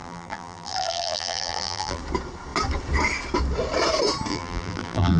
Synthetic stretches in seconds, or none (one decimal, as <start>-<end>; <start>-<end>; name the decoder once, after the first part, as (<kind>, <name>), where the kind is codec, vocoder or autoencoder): 0.0-2.0 (vocoder, BigVGAN v2); 4.3-5.2